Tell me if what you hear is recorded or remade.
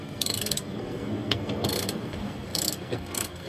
remade